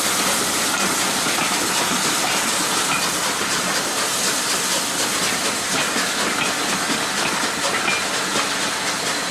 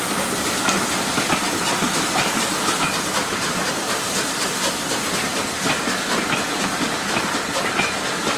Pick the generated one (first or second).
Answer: second